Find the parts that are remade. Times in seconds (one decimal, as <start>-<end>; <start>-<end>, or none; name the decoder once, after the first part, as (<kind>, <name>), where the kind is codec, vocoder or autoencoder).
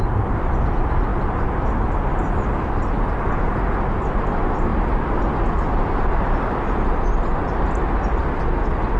none